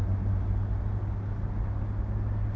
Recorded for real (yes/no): yes